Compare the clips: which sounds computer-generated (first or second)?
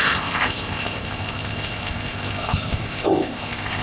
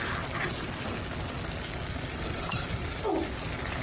first